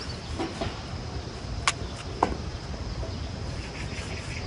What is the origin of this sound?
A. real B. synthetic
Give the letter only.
A